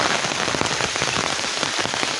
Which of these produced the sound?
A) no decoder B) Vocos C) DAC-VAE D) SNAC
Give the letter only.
A